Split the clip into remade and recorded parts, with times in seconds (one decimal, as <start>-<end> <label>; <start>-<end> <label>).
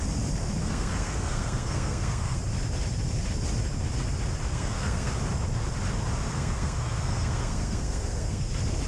0.0-0.6 recorded; 0.6-2.4 remade; 2.4-4.5 recorded; 4.5-5.1 remade; 5.1-6.3 recorded; 6.3-8.4 remade; 8.4-8.9 recorded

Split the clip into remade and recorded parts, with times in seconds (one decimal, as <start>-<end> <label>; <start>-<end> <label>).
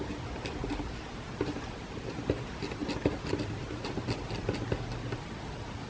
0.0-5.9 recorded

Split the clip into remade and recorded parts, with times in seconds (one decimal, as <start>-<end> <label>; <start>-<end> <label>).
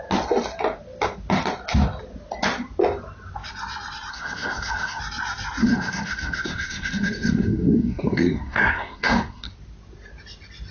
0.0-4.1 recorded; 4.1-5.0 remade; 5.0-5.6 recorded; 5.6-9.5 remade; 9.5-10.7 recorded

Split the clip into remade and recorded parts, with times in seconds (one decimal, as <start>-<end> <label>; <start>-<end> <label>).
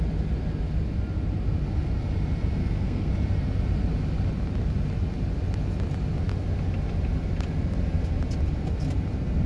0.0-2.6 recorded; 2.6-3.1 remade; 3.1-9.5 recorded